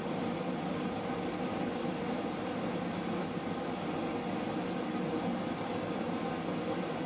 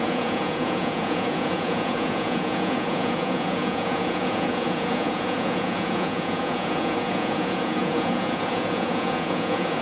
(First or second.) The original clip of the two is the first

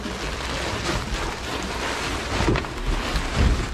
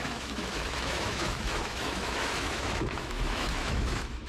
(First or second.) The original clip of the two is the first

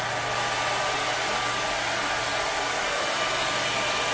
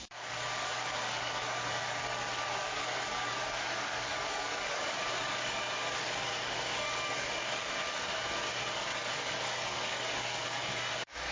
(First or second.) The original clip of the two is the first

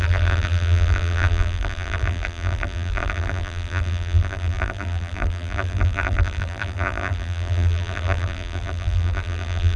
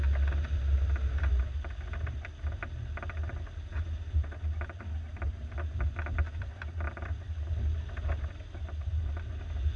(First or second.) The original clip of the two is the second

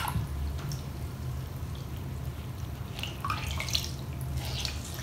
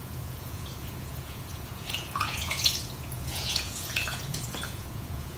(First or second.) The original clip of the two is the first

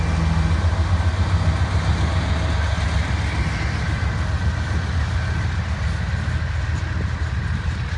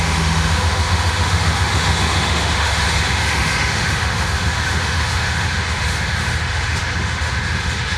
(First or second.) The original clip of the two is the first